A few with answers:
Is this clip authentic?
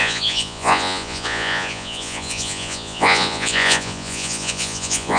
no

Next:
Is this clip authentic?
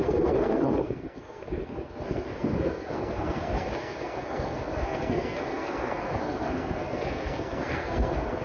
no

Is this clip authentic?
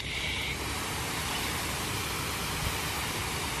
yes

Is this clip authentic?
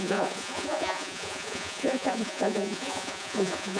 no